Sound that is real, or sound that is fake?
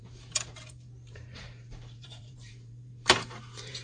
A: fake